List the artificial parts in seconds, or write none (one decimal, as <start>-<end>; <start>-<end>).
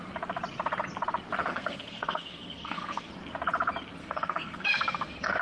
1.5-3.1; 4.0-5.4